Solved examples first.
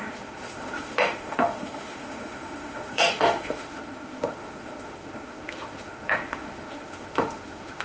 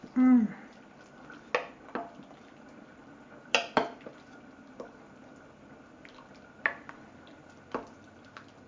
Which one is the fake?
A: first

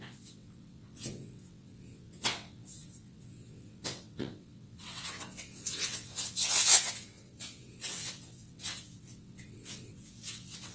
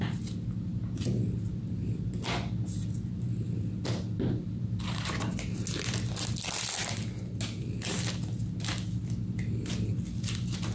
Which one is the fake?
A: first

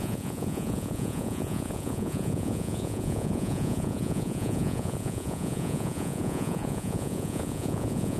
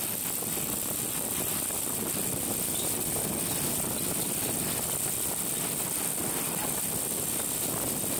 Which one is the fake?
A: first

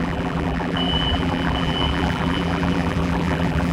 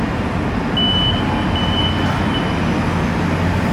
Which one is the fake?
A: first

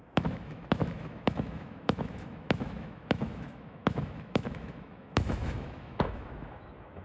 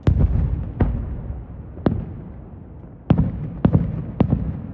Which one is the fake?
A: first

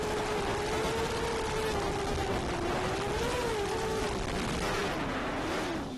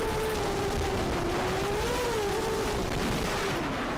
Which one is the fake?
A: second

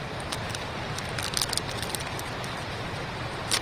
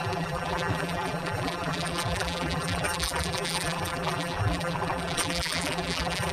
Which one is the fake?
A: second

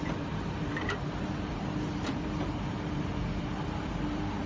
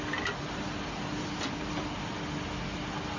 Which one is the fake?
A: first